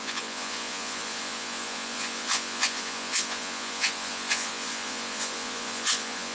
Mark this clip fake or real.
fake